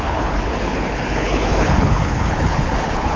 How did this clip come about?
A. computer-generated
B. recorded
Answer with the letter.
A